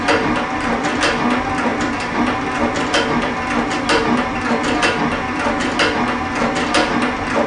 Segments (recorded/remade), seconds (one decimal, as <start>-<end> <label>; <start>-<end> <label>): 0.0-7.5 recorded